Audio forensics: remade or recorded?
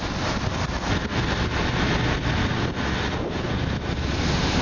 recorded